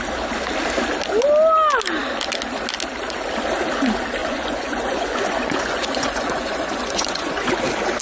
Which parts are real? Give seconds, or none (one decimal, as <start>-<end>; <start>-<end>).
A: 0.0-4.2; 7.5-8.0